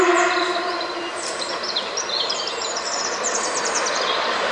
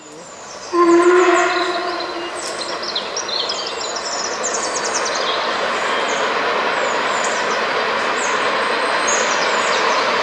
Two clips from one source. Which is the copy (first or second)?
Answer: first